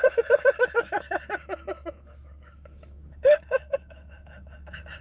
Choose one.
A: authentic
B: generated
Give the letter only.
B